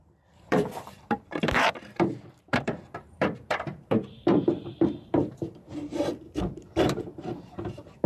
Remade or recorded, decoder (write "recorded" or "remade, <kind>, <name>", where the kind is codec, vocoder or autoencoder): remade, vocoder, BigVGAN v2